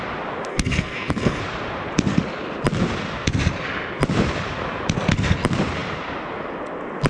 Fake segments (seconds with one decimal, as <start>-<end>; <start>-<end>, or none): 0.5-1.4